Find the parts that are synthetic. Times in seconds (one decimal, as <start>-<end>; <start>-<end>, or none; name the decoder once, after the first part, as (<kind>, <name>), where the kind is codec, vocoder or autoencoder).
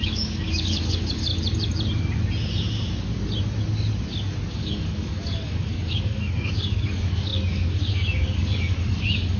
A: 0.0-1.3 (codec, DAC); 4.5-9.4